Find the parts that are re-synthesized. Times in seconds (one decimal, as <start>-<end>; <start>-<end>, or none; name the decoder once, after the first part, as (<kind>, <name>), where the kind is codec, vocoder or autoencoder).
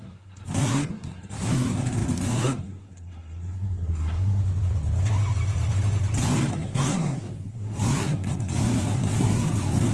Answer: 0.0-4.4 (codec, SNAC); 6.5-9.9